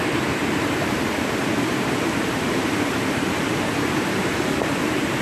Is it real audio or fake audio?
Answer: fake